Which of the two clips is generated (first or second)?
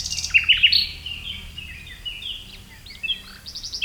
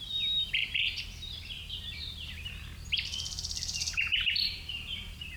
second